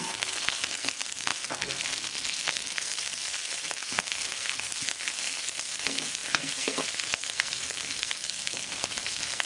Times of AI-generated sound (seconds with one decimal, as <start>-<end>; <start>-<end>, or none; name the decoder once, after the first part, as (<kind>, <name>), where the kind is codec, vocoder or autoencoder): 0.0-9.5 (codec, SNAC)